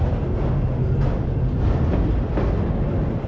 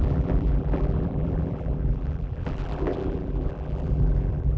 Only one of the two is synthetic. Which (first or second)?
second